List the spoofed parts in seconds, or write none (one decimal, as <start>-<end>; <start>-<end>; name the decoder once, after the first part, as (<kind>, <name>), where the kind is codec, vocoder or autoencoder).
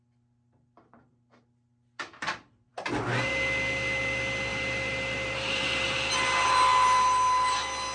4.5-6.1 (vocoder, BigVGAN v2)